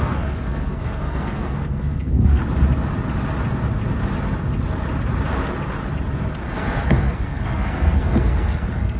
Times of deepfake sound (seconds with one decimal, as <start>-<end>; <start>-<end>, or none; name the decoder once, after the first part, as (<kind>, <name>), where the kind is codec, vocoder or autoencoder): 0.0-2.4 (codec, SNAC); 6.5-9.0

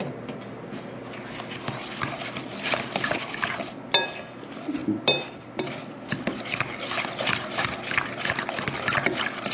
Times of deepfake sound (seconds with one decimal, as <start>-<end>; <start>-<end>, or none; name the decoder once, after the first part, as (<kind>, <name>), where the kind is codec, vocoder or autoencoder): none

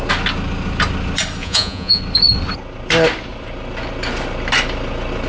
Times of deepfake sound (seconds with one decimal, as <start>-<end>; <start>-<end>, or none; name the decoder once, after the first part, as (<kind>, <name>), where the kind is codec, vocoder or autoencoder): 1.4-2.0 (vocoder, Vocos)

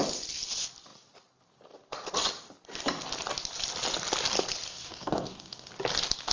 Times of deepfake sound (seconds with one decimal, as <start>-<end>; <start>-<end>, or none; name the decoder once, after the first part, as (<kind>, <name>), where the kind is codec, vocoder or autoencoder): 4.7-5.7 (codec, DAC)